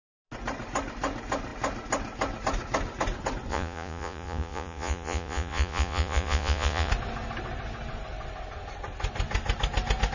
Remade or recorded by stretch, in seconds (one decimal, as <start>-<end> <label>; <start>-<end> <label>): 0.0-3.5 recorded; 3.5-6.9 remade; 6.9-10.1 recorded